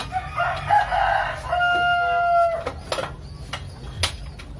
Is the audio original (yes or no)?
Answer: yes